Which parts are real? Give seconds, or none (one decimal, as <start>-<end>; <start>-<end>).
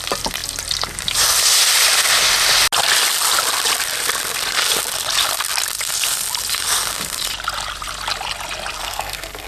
0.0-8.8